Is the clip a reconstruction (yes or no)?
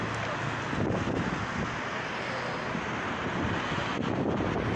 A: no